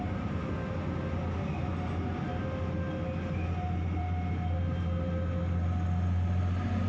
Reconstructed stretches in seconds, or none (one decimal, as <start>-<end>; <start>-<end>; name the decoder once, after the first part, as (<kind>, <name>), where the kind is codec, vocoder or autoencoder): none